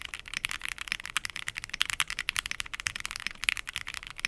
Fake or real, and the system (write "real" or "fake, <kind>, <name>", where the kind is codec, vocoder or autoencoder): real